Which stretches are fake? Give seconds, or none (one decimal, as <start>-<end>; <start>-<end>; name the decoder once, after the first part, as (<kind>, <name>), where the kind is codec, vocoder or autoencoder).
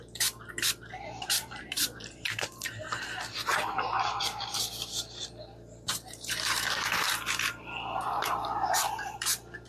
0.0-3.5 (vocoder, BigVGAN v2); 4.2-9.7